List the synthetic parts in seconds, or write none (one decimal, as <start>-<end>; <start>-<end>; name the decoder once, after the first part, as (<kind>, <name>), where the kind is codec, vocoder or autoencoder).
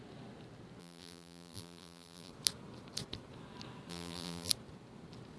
0.8-2.3 (vocoder, BigVGAN v2); 3.9-4.5